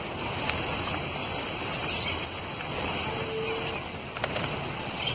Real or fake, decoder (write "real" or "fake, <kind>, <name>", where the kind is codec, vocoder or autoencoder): real